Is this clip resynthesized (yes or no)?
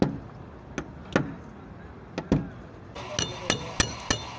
no